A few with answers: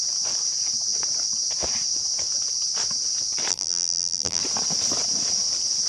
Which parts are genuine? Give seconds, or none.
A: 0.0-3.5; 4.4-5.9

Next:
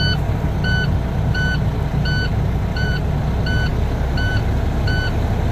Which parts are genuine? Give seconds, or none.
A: 0.0-2.3; 3.1-5.5

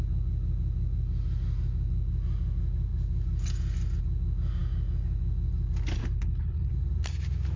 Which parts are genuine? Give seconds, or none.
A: 0.0-6.0; 6.7-7.6

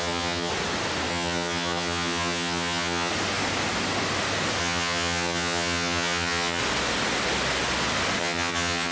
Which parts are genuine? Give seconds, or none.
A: 0.5-1.1; 3.1-4.6; 6.6-8.2

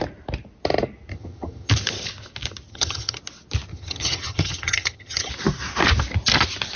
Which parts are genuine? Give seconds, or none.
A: 0.0-1.1; 1.7-2.7; 3.2-3.7; 5.3-6.8

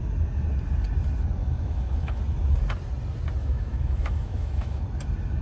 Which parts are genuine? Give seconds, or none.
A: 0.0-1.4; 2.2-3.4; 4.8-5.4

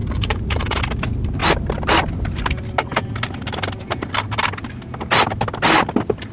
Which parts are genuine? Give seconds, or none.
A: 0.8-6.3

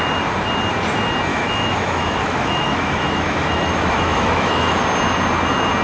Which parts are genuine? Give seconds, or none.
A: 0.0-1.3; 4.8-5.8